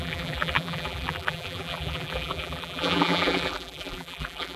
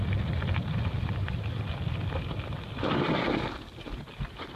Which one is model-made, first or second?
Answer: first